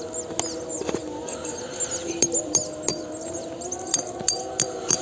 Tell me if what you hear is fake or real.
real